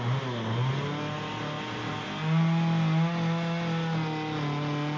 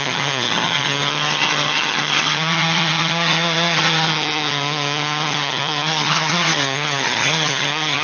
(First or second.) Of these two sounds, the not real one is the second